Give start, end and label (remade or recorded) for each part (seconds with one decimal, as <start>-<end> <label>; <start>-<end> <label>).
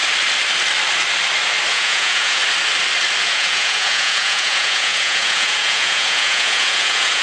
0.0-1.7 recorded; 1.7-2.4 remade; 2.4-3.2 recorded; 3.2-7.2 remade